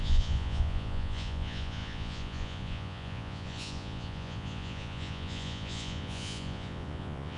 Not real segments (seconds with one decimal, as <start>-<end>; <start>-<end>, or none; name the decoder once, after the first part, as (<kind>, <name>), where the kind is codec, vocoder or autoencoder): 0.0-7.4 (vocoder, Vocos)